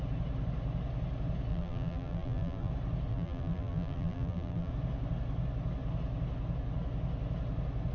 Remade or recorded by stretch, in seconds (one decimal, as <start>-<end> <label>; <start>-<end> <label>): 0.0-1.5 recorded; 1.5-2.7 remade; 2.7-3.1 recorded; 3.1-4.7 remade; 4.7-7.9 recorded

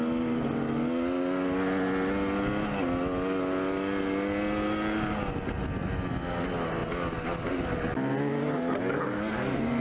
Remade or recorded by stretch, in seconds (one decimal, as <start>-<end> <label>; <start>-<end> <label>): 0.0-9.8 recorded

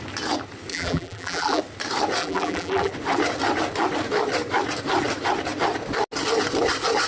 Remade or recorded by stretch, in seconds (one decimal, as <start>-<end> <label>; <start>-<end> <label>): 0.0-0.7 recorded; 0.7-1.6 remade; 1.6-2.2 recorded; 2.2-2.9 remade; 2.9-7.1 recorded